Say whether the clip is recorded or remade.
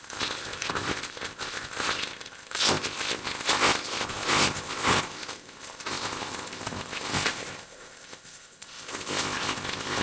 remade